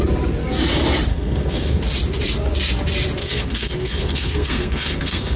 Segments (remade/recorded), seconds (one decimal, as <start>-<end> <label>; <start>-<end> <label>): 0.0-1.1 recorded; 1.1-1.8 remade; 1.8-3.2 recorded; 3.2-5.4 remade